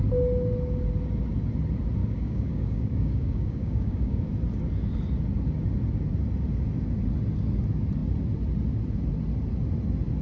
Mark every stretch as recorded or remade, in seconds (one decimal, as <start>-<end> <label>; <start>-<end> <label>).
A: 0.0-2.0 recorded; 2.0-4.3 remade; 4.3-10.2 recorded